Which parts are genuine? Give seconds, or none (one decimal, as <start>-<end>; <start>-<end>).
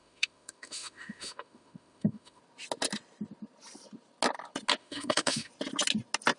2.4-4.8; 5.5-6.4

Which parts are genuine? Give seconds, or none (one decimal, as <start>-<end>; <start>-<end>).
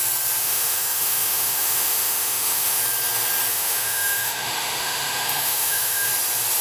0.0-0.4; 2.8-3.5; 6.1-6.6